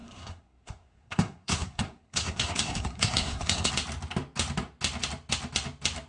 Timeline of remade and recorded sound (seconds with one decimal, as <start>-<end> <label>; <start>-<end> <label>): 0.0-3.7 remade; 3.7-6.1 recorded

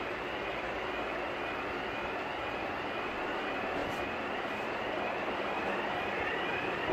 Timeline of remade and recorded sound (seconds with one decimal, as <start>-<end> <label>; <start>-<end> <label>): 0.0-6.9 recorded

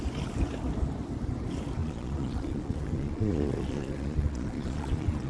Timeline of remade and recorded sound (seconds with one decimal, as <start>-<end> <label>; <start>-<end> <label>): 0.0-1.8 recorded; 1.8-5.3 remade

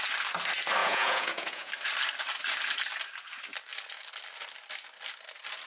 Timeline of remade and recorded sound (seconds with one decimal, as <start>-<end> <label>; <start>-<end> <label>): 0.0-0.8 recorded; 0.8-1.7 remade; 1.7-5.7 recorded

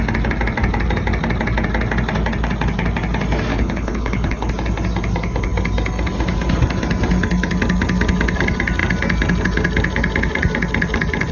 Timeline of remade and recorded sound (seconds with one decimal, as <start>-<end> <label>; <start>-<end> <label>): 0.0-3.5 recorded; 3.5-4.5 remade; 4.5-11.3 recorded

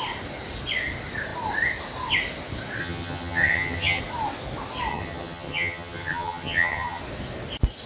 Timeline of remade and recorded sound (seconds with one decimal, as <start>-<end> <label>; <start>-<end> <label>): 0.0-2.8 recorded; 2.8-4.0 remade; 4.0-4.9 recorded; 4.9-7.0 remade; 7.0-7.9 recorded

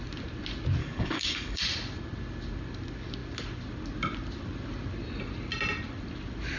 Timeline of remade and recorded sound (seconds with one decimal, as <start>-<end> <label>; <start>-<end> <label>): 0.0-0.8 recorded; 0.8-1.6 remade; 1.6-6.6 recorded